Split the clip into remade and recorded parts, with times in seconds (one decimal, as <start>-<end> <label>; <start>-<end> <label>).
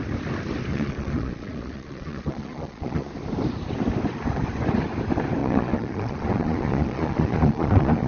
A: 0.0-0.7 recorded; 0.7-3.1 remade; 3.1-5.4 recorded; 5.4-8.1 remade